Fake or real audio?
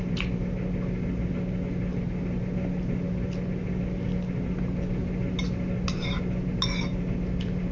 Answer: real